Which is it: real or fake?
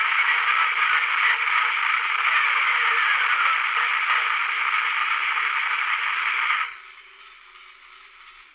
real